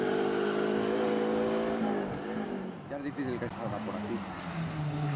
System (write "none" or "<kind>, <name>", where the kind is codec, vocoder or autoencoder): none